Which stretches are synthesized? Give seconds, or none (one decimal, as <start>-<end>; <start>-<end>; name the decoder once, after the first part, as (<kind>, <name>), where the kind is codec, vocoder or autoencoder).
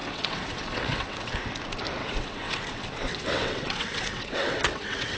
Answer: 0.0-1.3 (vocoder, WaveNeXt); 2.0-5.2